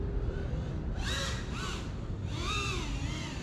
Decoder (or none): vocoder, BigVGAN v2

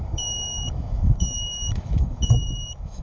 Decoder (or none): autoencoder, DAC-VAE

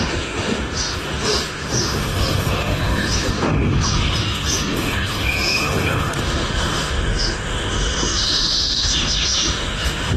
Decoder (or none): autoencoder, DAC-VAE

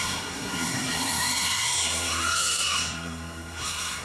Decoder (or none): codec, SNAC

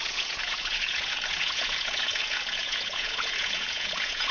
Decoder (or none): vocoder, Vocos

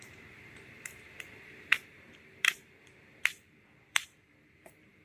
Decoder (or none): vocoder, BigVGAN v2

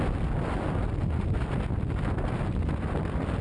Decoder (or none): none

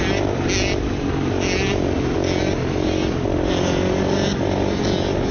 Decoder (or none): none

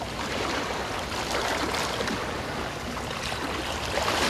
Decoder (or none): none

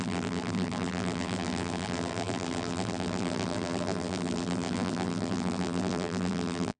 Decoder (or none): vocoder, BigVGAN v2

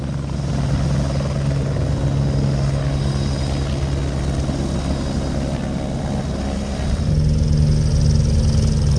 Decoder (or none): none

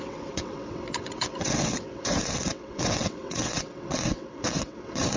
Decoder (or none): vocoder, WaveNeXt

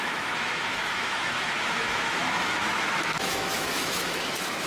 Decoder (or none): autoencoder, DAC-VAE